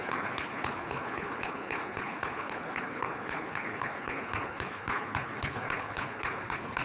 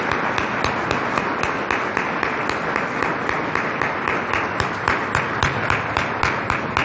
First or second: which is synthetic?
first